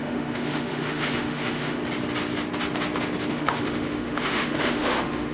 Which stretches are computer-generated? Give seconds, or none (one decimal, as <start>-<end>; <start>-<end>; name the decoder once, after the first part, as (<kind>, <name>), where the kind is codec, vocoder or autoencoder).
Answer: 0.0-1.8 (autoencoder, DAC-VAE); 3.3-5.3